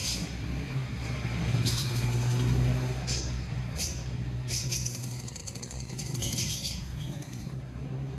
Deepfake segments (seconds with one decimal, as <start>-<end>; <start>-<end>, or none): 0.0-8.2